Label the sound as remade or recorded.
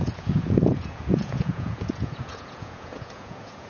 remade